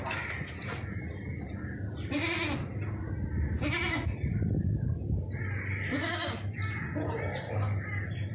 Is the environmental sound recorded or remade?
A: recorded